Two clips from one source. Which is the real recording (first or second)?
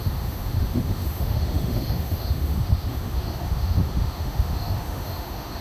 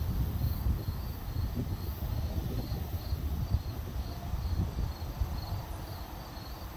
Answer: second